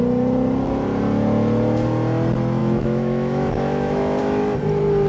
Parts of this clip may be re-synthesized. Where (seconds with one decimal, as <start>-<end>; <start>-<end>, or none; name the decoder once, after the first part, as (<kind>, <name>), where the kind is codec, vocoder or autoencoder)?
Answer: 2.6-4.2 (autoencoder, DAC-VAE)